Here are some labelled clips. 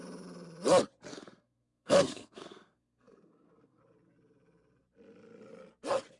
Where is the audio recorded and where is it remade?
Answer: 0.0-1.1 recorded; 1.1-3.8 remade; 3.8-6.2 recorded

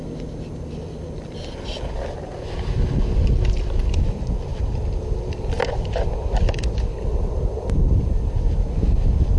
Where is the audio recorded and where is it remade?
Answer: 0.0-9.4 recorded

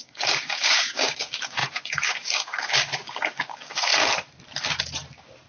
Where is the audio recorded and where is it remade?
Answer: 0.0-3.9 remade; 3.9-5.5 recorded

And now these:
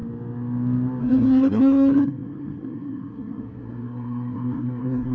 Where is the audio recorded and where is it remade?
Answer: 0.0-1.0 recorded; 1.0-5.1 remade

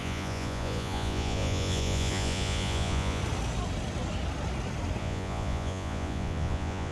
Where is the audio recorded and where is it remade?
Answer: 0.0-3.2 remade; 3.2-5.0 recorded; 5.0-6.9 remade

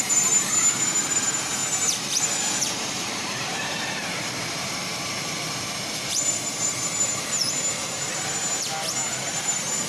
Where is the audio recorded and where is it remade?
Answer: 0.0-1.6 remade; 1.6-2.2 recorded; 2.2-8.3 remade; 8.3-9.1 recorded; 9.1-9.9 remade

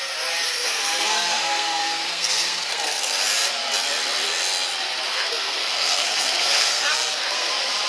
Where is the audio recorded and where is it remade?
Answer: 0.0-0.5 recorded; 0.5-3.2 remade; 3.2-5.1 recorded; 5.1-7.5 remade; 7.5-7.9 recorded

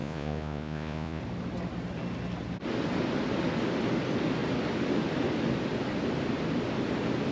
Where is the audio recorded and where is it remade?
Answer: 0.0-1.2 remade; 1.2-7.3 recorded